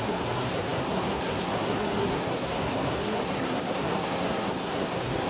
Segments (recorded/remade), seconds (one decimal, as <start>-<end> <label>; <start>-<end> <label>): 0.0-5.3 remade